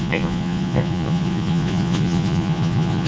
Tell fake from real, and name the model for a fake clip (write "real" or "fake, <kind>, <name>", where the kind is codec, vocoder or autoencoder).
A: fake, vocoder, Vocos